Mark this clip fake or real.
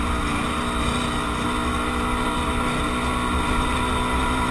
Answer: real